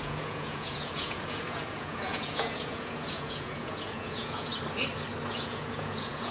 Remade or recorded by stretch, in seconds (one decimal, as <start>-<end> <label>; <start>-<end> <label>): 0.0-4.5 remade; 4.5-5.3 recorded; 5.3-6.3 remade